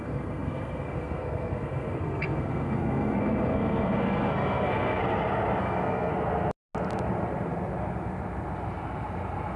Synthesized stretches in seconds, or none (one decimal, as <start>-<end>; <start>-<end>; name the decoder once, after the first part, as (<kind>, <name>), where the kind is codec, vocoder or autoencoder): 0.0-5.0 (codec, SNAC); 5.6-6.1